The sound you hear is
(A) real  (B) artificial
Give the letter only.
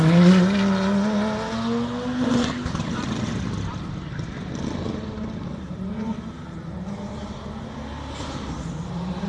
A